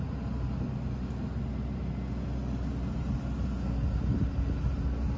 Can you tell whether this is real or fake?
real